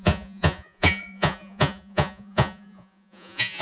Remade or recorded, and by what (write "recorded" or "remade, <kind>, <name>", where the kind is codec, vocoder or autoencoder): remade, vocoder, Vocos